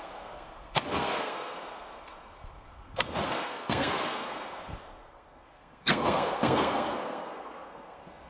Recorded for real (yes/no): no